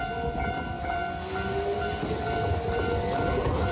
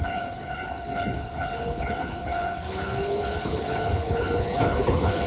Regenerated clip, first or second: second